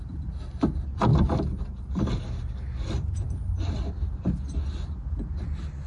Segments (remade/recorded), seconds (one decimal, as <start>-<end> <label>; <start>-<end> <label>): 0.0-5.9 recorded